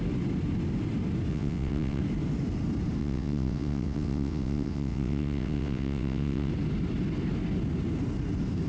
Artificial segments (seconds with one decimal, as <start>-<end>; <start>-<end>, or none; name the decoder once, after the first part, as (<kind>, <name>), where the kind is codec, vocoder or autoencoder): 1.3-2.0 (vocoder, WaveNeXt); 3.0-6.5